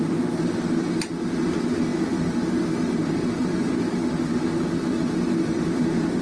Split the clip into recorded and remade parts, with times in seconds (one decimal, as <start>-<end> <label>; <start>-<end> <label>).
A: 0.0-6.2 recorded

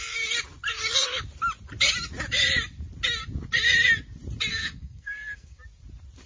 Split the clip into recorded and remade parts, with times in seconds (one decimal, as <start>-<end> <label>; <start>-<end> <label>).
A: 0.0-4.6 recorded; 4.6-5.6 remade; 5.6-6.3 recorded

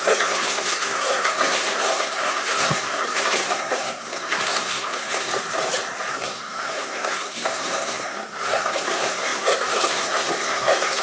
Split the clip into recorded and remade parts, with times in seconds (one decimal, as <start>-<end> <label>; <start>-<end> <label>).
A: 0.0-5.3 remade; 5.3-6.1 recorded; 6.1-11.0 remade

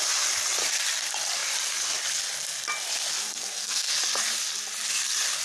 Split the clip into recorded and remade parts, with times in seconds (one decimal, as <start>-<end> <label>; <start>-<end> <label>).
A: 0.0-3.2 recorded; 3.2-3.9 remade; 3.9-5.4 recorded

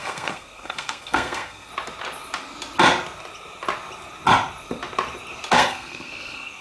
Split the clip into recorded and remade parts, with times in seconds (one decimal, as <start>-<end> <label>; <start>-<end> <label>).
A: 0.0-1.7 remade; 1.7-5.5 recorded; 5.5-6.6 remade

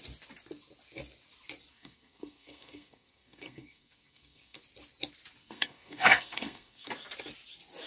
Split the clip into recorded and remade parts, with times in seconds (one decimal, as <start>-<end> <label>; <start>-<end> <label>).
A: 0.0-1.7 recorded; 1.7-4.6 remade; 4.6-5.4 recorded; 5.4-6.9 remade; 6.9-7.9 recorded

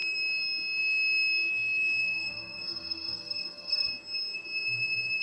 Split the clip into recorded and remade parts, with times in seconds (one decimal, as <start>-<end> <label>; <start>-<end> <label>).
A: 0.0-2.0 recorded; 2.0-3.9 remade; 3.9-5.2 recorded